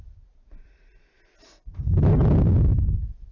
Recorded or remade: recorded